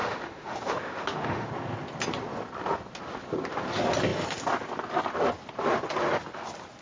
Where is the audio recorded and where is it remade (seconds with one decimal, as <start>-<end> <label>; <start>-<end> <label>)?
0.0-1.5 remade; 1.5-6.8 recorded

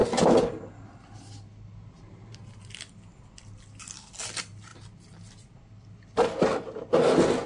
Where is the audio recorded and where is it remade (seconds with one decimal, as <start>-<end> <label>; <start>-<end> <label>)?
0.0-7.5 recorded

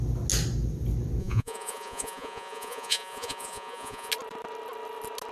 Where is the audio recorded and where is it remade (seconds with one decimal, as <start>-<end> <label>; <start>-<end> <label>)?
0.0-1.2 recorded; 1.2-4.1 remade; 4.1-5.3 recorded

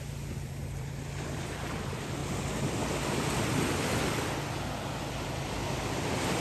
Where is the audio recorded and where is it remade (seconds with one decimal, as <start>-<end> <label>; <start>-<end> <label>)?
0.0-2.2 remade; 2.2-5.1 recorded; 5.1-6.4 remade

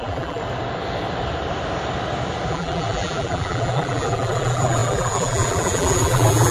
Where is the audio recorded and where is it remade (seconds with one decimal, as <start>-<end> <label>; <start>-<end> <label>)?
0.0-0.4 remade; 0.4-2.5 recorded; 2.5-6.5 remade

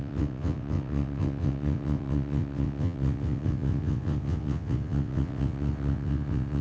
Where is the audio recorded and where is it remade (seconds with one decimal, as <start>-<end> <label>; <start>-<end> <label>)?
0.0-6.6 remade